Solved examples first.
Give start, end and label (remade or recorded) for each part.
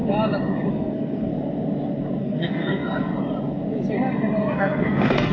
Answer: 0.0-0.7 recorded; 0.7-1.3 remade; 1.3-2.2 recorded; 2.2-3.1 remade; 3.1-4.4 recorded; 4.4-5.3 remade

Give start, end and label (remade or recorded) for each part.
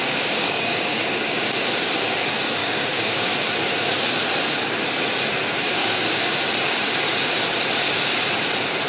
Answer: 0.0-1.5 remade; 1.5-2.6 recorded; 2.6-3.3 remade; 3.3-5.8 recorded; 5.8-6.3 remade; 6.3-8.9 recorded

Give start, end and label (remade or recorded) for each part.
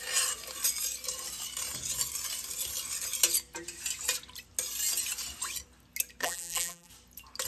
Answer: 0.0-6.2 recorded; 6.2-6.9 remade; 6.9-7.5 recorded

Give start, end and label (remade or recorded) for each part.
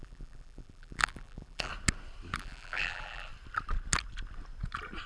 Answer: 0.0-1.7 remade; 1.7-2.4 recorded; 2.4-3.3 remade; 3.3-5.1 recorded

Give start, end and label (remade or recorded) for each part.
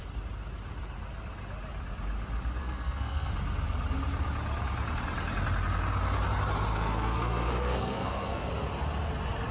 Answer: 0.0-2.6 recorded; 2.6-3.3 remade; 3.3-6.7 recorded; 6.7-8.5 remade; 8.5-9.5 recorded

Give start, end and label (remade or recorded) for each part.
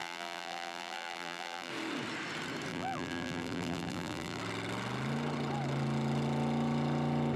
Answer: 0.0-1.7 remade; 1.7-2.7 recorded; 2.7-4.4 remade; 4.4-7.4 recorded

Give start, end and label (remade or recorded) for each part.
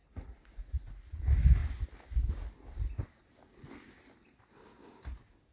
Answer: 0.0-1.2 remade; 1.2-5.5 recorded